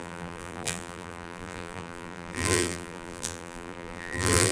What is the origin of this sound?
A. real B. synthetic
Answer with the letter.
B